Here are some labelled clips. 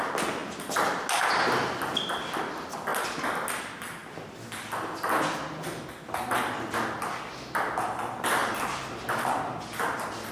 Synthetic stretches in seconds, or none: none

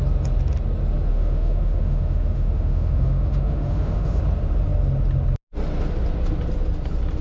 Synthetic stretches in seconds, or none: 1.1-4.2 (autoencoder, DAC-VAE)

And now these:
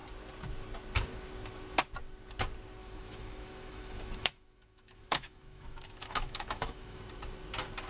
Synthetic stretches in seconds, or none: 2.8-7.0 (autoencoder, DAC-VAE)